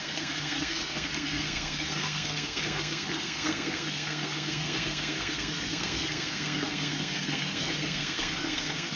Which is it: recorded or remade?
remade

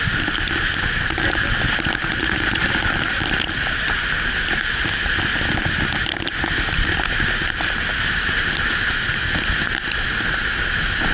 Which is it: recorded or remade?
recorded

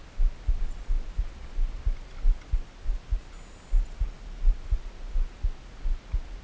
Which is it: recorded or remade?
recorded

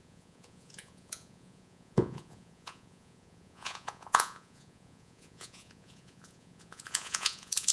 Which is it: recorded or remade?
remade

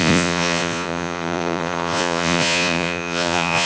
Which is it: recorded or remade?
remade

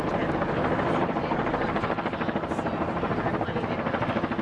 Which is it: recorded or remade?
recorded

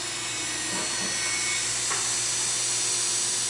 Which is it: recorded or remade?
recorded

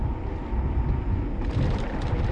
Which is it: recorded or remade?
recorded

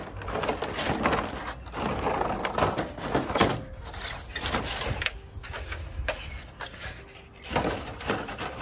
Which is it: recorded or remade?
recorded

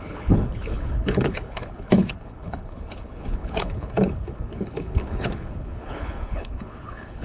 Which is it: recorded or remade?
remade